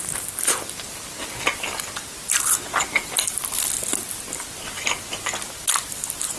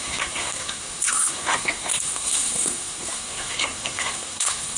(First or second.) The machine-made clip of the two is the second